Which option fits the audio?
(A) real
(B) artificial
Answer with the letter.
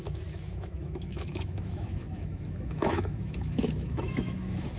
B